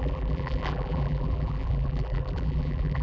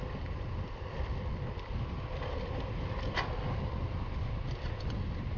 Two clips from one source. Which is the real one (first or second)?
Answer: second